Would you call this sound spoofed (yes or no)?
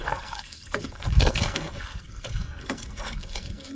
yes